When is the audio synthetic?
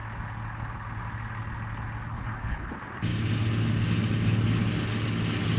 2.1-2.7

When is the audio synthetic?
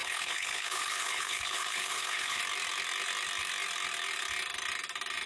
0.0-2.4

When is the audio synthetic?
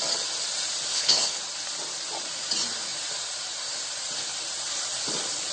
0.9-1.4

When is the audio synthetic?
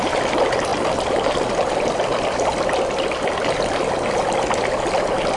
none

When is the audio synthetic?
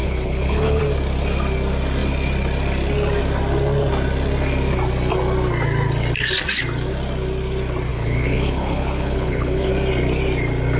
0.0-0.8; 7.9-9.7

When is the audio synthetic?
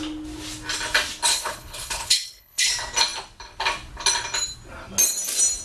1.3-2.7